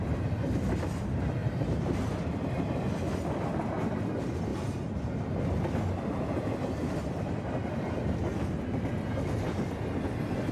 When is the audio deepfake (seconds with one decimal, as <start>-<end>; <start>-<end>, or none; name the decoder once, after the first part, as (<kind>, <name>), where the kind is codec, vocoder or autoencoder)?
1.4-2.0 (vocoder, BigVGAN v2)

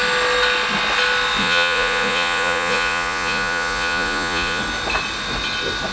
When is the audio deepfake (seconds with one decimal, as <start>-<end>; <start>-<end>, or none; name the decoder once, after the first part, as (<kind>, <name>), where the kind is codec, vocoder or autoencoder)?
1.4-4.6 (vocoder, Vocos)

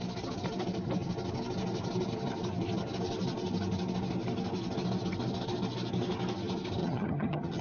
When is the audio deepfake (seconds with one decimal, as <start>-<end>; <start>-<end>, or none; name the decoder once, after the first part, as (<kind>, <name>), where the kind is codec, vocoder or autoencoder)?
6.8-7.6 (vocoder, HiFi-GAN)

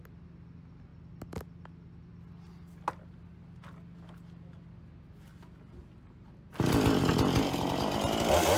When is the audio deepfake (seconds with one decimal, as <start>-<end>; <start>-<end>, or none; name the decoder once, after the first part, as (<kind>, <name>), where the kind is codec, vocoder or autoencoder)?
none

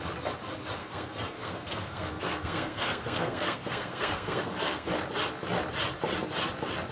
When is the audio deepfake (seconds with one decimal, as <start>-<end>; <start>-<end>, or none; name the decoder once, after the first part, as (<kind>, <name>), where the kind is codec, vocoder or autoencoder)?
0.8-4.9 (codec, SNAC)

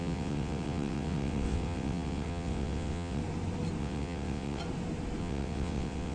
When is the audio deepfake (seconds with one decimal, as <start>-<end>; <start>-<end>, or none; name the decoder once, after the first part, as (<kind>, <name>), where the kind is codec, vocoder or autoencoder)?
0.0-3.2 (vocoder, WaveNeXt); 3.8-4.6; 5.2-6.1

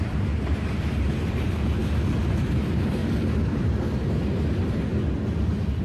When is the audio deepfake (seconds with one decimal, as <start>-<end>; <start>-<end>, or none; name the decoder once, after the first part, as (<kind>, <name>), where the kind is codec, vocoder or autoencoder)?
0.0-1.8 (vocoder, BigVGAN v2); 2.4-3.0; 3.6-4.9

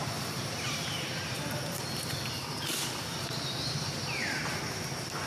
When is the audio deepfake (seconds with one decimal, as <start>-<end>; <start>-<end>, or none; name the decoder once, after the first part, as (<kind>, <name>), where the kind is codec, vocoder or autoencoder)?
0.0-1.8 (vocoder, BigVGAN v2); 3.1-4.4